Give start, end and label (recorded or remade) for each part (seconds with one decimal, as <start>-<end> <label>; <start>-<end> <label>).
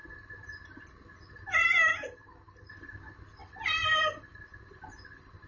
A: 0.0-3.4 recorded; 3.4-4.4 remade; 4.4-5.5 recorded